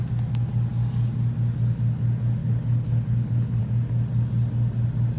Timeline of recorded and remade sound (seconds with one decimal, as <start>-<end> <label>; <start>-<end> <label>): 0.0-2.4 recorded; 2.4-3.6 remade; 3.6-5.2 recorded